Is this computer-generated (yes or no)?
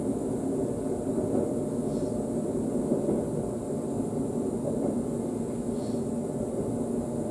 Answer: no